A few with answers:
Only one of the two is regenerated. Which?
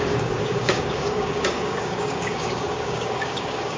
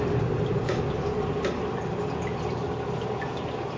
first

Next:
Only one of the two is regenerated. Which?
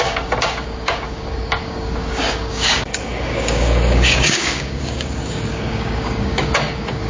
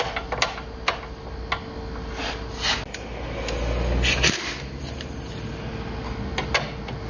first